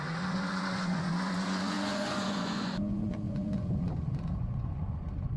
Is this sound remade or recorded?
remade